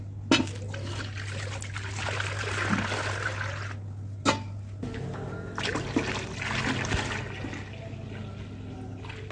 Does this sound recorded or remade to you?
recorded